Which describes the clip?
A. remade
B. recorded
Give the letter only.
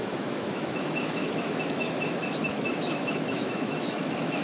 A